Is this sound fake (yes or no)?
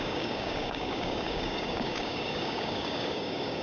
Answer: yes